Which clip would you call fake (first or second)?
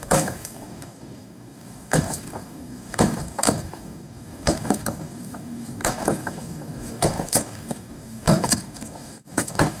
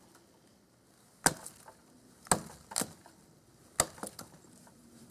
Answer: first